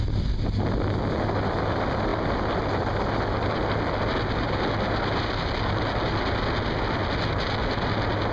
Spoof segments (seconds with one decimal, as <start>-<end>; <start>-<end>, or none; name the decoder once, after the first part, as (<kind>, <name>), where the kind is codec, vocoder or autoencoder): none